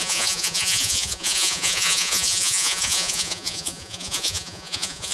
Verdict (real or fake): fake